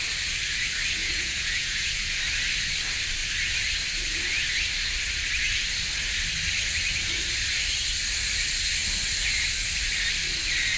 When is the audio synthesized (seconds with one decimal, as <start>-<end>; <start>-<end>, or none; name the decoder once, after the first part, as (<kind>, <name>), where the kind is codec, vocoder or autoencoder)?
1.0-2.2 (vocoder, Vocos)